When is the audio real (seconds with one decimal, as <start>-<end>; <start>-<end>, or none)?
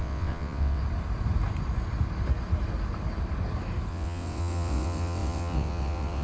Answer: 0.8-3.9